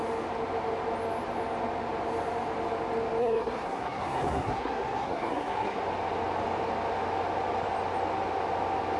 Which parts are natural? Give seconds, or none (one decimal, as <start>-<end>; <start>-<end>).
0.0-3.2; 5.8-9.0